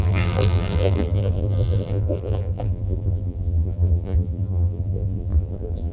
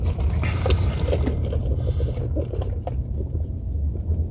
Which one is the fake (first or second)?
first